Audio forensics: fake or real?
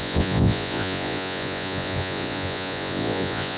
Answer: fake